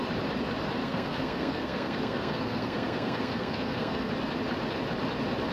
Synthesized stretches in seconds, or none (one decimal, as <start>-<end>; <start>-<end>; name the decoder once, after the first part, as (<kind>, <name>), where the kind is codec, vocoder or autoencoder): 0.8-4.1 (codec, SNAC)